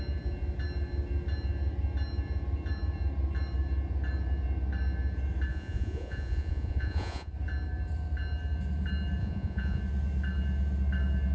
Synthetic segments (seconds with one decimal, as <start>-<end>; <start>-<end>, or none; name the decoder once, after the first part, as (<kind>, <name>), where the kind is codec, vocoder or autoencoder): 5.5-7.3 (vocoder, Vocos); 9.2-9.8